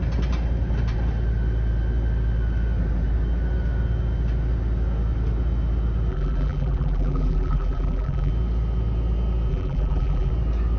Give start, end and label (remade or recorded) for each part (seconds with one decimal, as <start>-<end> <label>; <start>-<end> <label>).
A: 0.0-6.1 recorded; 6.1-8.3 remade; 8.3-9.5 recorded; 9.5-10.3 remade; 10.3-10.8 recorded